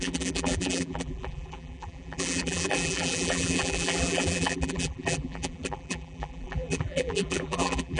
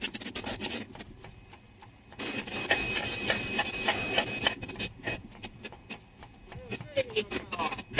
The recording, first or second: second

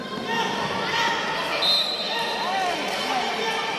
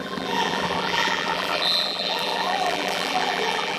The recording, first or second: first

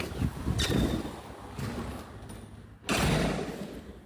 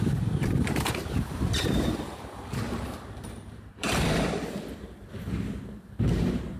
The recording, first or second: first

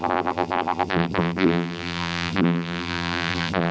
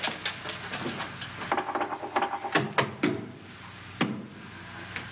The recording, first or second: second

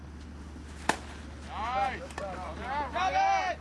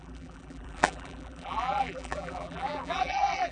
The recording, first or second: first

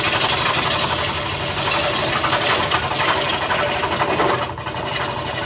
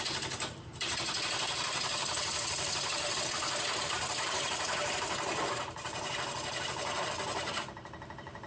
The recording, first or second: first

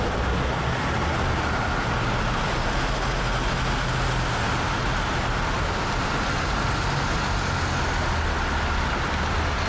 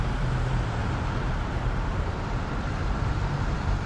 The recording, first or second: first